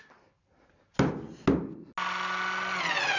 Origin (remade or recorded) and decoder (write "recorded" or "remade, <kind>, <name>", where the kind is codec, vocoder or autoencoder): recorded